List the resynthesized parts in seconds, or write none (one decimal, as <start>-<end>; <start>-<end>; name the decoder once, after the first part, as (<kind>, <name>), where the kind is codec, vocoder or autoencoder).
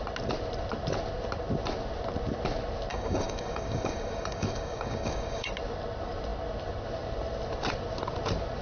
2.9-5.5 (codec, DAC)